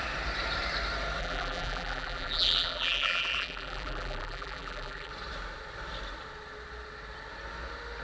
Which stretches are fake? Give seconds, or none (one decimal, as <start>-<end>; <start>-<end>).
1.2-5.1